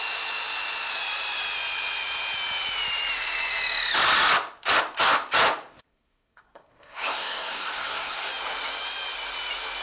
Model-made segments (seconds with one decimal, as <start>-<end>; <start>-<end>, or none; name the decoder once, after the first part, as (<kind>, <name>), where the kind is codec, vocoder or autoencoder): 5.8-8.3 (codec, SNAC)